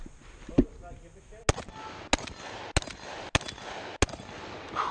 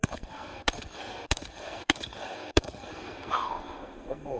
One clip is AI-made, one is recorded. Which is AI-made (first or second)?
second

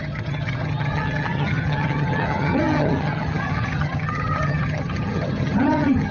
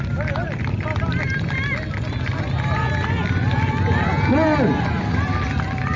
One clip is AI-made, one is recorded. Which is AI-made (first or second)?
first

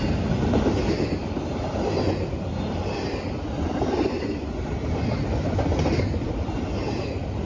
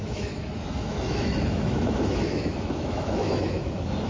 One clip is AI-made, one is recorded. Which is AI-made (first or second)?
second